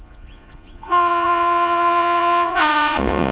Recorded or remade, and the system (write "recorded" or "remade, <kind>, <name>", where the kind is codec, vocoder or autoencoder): remade, vocoder, Vocos